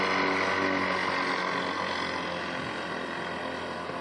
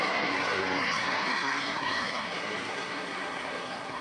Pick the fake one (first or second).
second